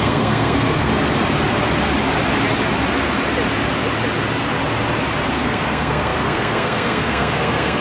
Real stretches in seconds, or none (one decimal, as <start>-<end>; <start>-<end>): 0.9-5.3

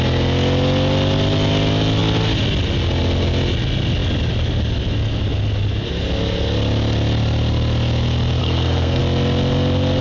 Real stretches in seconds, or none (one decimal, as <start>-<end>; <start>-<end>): 0.0-8.4; 9.0-10.0

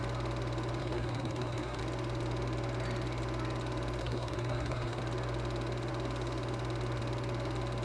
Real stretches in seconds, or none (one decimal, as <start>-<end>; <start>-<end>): 0.0-0.8; 1.8-4.0; 5.0-7.8